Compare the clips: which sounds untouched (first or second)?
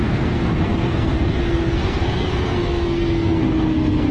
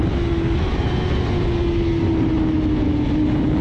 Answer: second